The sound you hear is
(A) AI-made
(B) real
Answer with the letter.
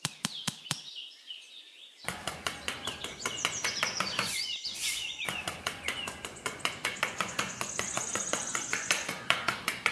A